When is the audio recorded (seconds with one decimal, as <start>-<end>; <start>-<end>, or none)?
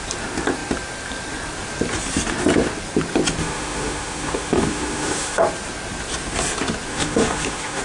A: 0.0-3.4; 5.4-6.9